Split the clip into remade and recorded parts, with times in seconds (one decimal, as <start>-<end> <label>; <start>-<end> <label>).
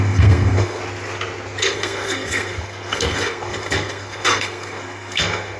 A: 0.0-0.8 remade; 0.8-1.6 recorded; 1.6-5.6 remade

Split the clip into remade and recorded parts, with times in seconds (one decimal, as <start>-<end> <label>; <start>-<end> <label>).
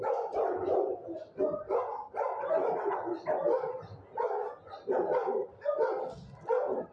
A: 0.0-6.9 recorded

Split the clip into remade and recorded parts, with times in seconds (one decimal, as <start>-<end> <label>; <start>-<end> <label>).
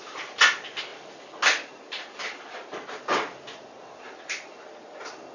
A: 0.0-5.3 recorded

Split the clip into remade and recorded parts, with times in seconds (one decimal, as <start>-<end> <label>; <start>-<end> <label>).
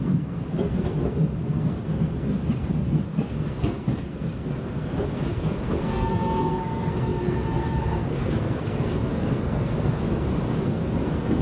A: 0.0-11.4 remade